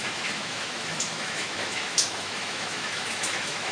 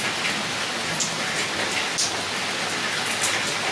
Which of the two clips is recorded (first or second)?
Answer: second